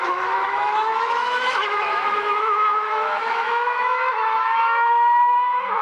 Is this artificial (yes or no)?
yes